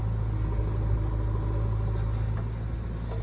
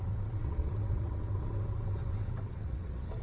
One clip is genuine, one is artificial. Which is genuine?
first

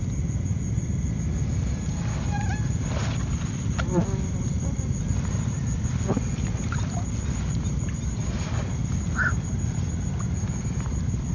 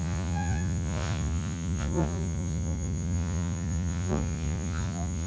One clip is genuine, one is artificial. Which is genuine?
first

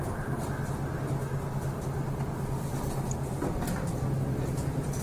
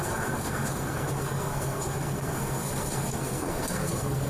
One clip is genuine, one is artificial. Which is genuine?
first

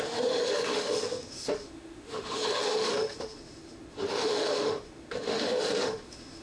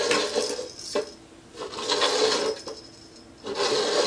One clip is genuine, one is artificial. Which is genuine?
second